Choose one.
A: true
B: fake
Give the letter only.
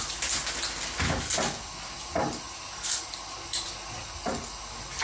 A